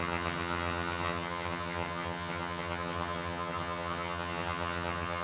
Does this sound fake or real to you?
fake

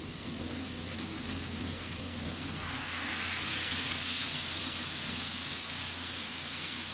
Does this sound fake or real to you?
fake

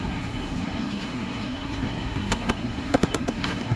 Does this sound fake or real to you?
fake